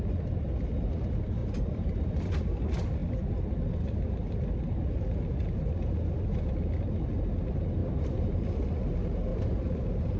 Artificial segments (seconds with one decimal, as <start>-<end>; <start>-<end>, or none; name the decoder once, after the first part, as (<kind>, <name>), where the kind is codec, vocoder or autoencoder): 1.4-2.1 (vocoder, BigVGAN v2); 7.8-8.5; 9.3-10.2